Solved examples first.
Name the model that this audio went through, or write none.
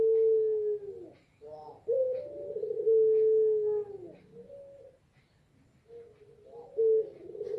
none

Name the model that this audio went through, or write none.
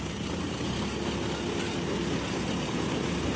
none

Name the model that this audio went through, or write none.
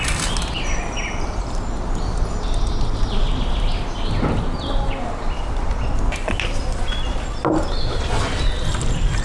none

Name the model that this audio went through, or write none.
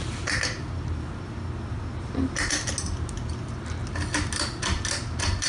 none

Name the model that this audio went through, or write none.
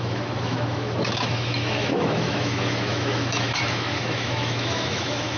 autoencoder, DAC-VAE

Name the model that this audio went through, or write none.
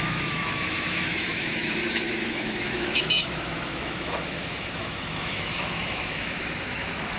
autoencoder, DAC-VAE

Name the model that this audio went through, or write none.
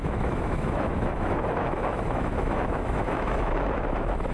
autoencoder, DAC-VAE